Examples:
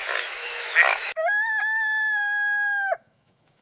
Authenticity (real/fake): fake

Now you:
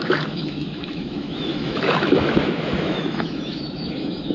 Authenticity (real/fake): fake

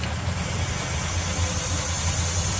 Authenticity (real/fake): real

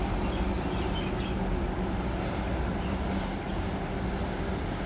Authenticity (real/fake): real